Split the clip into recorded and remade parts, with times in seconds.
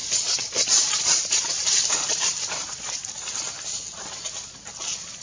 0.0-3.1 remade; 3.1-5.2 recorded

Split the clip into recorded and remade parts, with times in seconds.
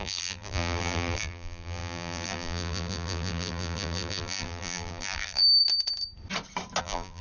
0.0-5.6 remade; 5.6-6.8 recorded; 6.8-7.2 remade